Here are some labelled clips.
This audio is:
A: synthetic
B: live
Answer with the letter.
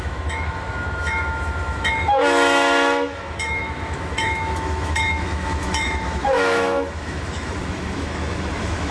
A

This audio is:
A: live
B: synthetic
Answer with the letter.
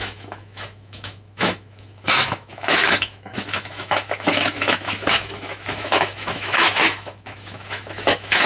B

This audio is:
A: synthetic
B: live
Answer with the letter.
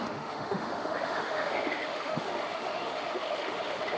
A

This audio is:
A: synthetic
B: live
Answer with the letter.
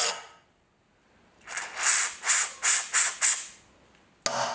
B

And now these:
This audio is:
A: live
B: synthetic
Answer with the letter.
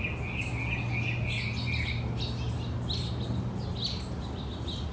A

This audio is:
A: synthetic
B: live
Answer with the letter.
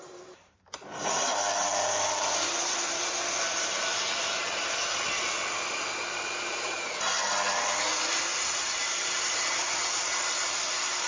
A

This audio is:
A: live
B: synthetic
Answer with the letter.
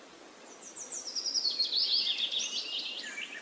A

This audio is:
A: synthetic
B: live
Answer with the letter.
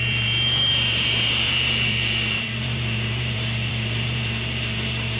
A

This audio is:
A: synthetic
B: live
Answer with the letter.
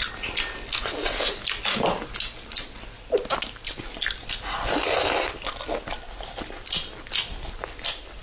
B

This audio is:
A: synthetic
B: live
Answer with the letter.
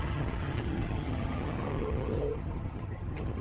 A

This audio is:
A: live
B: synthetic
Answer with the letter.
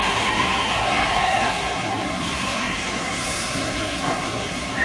B